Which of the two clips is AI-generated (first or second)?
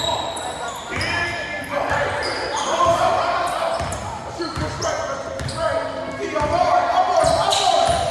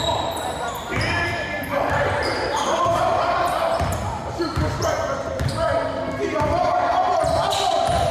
second